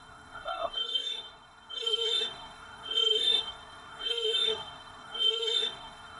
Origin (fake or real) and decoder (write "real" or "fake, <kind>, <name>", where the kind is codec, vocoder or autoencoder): fake, codec, SNAC